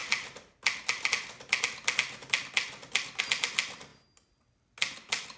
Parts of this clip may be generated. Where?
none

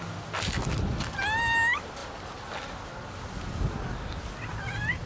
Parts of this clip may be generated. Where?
none

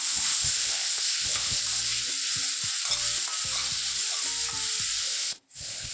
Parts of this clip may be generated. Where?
0.0-1.6 (codec, ZipCodec); 5.0-5.9

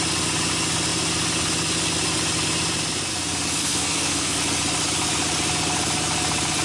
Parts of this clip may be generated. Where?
3.6-4.4 (codec, SNAC)

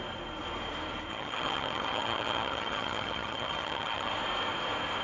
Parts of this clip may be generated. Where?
1.1-4.1 (vocoder, HiFi-GAN)

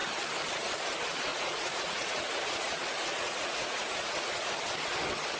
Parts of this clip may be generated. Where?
1.3-4.5 (vocoder, Vocos)

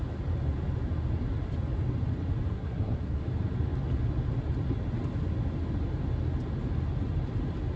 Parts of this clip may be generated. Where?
2.5-3.2 (codec, SNAC)